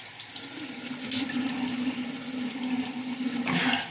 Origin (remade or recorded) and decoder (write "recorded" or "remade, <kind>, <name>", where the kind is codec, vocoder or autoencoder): recorded